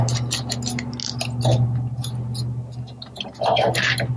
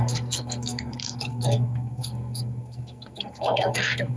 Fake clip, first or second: second